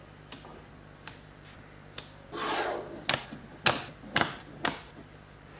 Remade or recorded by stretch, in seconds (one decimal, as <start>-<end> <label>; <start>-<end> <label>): 0.0-5.6 recorded